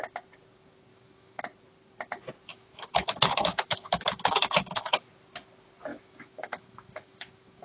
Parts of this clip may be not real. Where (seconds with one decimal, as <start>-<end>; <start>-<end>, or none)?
0.9-1.4; 2.5-5.1; 5.9-7.6